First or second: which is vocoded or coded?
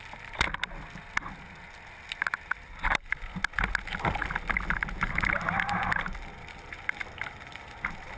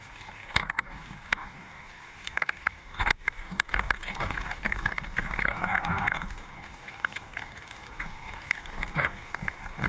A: second